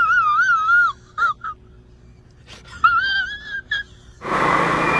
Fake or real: real